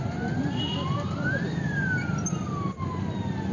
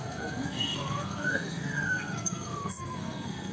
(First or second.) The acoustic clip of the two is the first